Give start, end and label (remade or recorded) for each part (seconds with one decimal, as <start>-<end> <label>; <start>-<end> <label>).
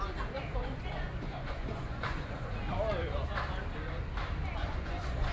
0.0-0.6 recorded; 0.6-2.5 remade; 2.5-4.6 recorded; 4.6-5.3 remade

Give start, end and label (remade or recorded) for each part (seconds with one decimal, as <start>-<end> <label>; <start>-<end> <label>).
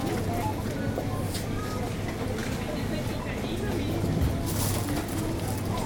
0.0-5.9 recorded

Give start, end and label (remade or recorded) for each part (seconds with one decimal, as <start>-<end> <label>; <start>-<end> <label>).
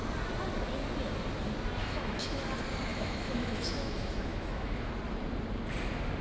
0.0-1.8 recorded; 1.8-2.4 remade; 2.4-2.9 recorded; 2.9-4.9 remade; 4.9-6.2 recorded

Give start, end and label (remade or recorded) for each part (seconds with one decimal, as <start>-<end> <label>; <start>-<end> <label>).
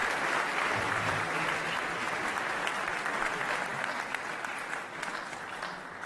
0.0-1.2 remade; 1.2-6.1 recorded